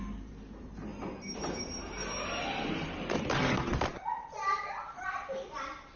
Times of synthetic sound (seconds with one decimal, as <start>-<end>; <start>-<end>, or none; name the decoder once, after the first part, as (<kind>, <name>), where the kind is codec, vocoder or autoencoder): 0.0-2.0 (vocoder, BigVGAN v2); 3.3-6.0